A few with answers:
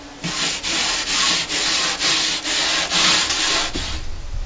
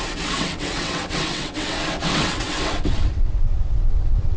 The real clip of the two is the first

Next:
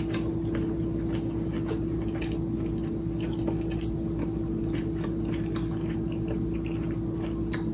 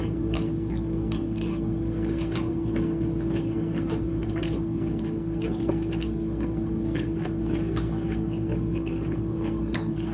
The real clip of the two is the first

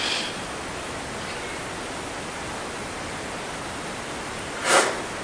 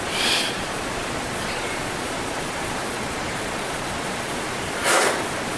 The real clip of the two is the first